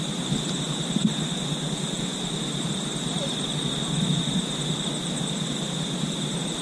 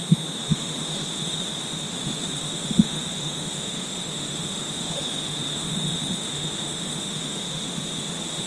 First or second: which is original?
first